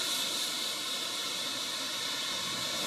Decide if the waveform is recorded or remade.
remade